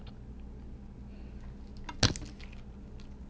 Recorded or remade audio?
recorded